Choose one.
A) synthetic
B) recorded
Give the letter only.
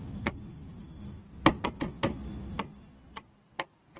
B